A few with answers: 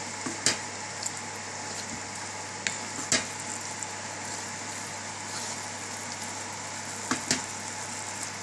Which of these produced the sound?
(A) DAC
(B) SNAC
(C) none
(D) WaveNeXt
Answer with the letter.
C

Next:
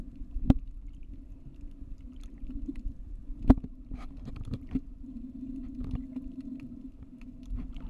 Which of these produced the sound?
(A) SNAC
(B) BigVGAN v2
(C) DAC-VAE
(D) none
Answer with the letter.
D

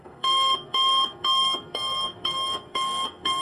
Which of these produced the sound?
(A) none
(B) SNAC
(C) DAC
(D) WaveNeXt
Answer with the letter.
B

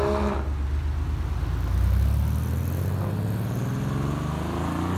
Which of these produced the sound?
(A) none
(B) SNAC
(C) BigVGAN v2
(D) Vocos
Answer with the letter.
A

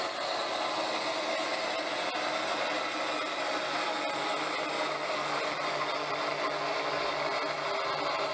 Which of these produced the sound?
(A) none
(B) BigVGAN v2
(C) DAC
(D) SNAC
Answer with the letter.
A